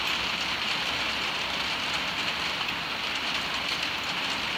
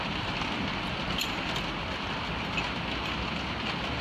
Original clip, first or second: second